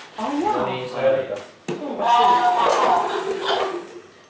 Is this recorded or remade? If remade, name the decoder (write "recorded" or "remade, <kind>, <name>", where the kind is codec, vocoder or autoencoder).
recorded